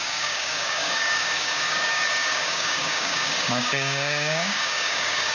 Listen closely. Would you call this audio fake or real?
fake